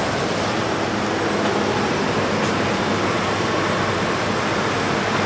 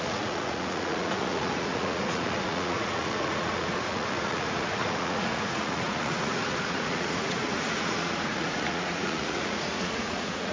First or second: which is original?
first